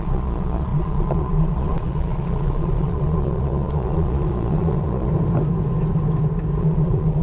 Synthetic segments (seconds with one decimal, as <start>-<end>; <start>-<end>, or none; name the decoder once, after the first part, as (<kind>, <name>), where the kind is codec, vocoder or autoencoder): 0.0-5.1 (vocoder, Vocos); 6.6-7.2